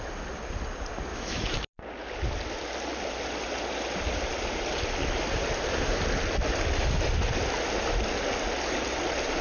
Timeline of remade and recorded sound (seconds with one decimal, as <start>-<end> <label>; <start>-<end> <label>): 0.0-1.1 recorded; 1.1-1.6 remade; 1.6-9.4 recorded